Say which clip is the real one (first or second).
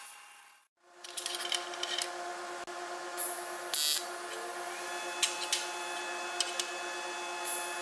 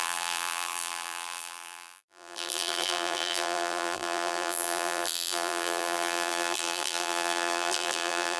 first